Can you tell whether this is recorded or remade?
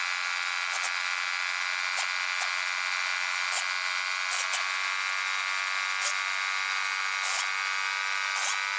recorded